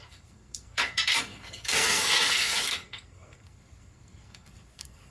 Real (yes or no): no